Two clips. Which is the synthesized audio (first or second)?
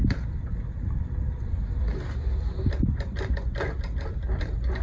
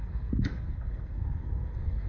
second